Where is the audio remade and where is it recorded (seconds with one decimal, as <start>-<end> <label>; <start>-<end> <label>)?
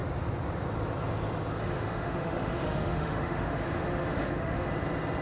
0.0-1.6 recorded; 1.6-4.7 remade; 4.7-5.2 recorded